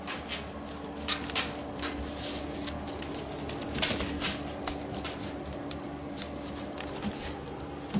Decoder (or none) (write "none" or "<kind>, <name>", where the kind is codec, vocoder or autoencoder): none